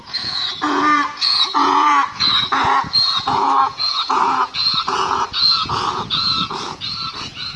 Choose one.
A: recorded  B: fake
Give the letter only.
B